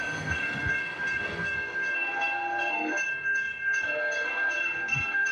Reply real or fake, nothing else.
fake